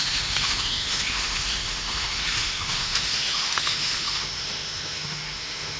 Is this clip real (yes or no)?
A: no